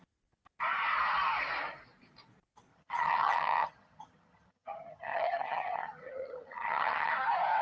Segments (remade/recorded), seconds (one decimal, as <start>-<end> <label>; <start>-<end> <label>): 0.0-2.7 recorded; 2.7-7.1 remade; 7.1-7.6 recorded